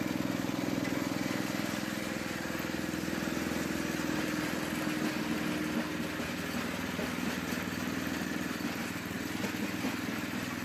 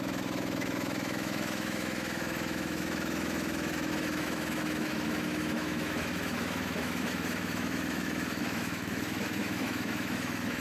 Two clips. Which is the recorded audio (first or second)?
first